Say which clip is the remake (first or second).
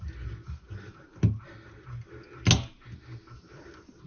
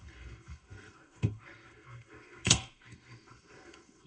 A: second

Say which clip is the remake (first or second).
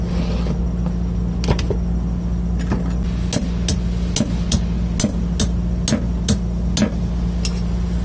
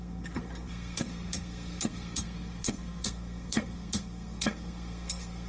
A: second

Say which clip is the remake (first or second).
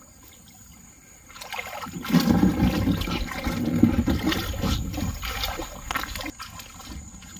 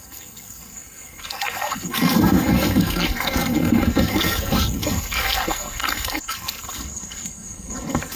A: second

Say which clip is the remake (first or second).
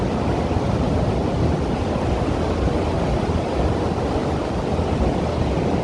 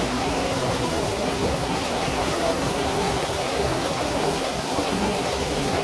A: second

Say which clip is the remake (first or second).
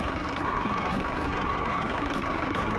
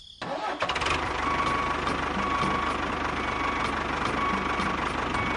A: first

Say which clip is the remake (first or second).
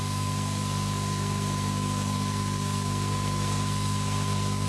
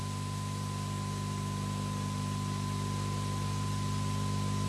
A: first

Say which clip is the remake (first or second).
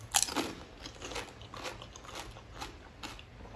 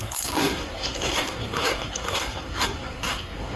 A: second